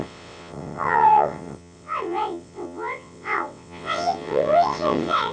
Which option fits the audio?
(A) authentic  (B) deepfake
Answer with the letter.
B